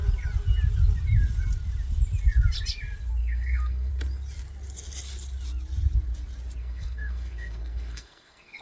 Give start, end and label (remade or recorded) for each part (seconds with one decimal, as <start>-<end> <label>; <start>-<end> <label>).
0.0-3.2 recorded; 3.2-3.9 remade; 3.9-6.6 recorded; 6.6-8.6 remade